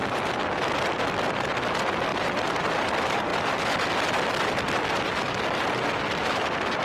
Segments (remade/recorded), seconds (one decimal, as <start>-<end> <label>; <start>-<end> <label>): 0.0-1.5 recorded; 1.5-3.3 remade; 3.3-4.4 recorded; 4.4-6.8 remade